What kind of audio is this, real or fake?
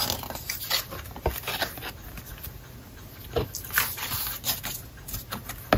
real